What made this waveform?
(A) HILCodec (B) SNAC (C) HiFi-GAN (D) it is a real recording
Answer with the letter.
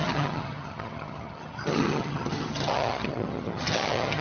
C